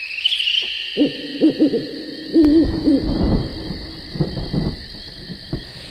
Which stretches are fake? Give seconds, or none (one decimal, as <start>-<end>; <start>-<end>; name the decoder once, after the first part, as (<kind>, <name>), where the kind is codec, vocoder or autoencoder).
2.3-2.9 (autoencoder, DAC-VAE)